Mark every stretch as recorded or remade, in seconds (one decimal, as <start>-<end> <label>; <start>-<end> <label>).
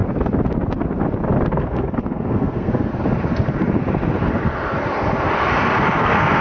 0.0-1.5 recorded; 1.5-2.9 remade; 2.9-6.0 recorded; 6.0-6.4 remade